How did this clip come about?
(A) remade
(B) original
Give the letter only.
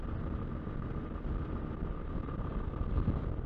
B